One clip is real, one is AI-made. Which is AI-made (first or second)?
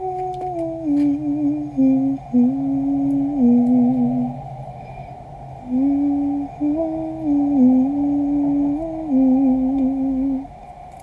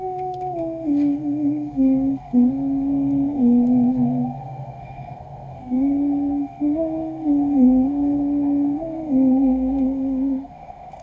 second